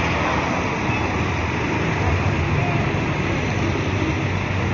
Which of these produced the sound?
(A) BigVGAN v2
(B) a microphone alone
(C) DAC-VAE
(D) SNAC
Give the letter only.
B